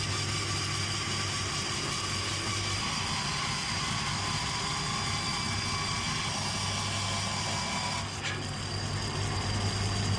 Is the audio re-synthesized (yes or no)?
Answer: no